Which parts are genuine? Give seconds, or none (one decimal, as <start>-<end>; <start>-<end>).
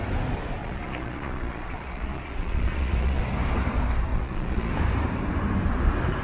0.0-0.6; 3.2-4.1; 4.7-6.2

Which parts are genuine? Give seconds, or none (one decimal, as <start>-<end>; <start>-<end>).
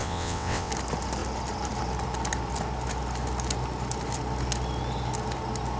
0.7-5.8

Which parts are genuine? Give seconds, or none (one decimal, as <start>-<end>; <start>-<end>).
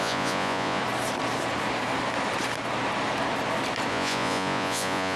0.8-3.9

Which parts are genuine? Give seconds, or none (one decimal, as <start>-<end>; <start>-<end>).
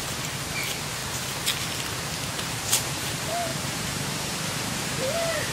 1.0-2.4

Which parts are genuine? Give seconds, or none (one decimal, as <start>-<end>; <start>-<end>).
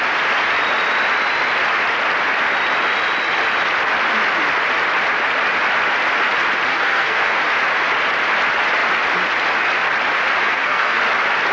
0.0-6.7; 7.4-10.4; 11.0-11.5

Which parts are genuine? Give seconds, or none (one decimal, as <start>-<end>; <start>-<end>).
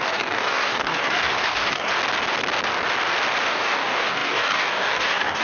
1.9-3.5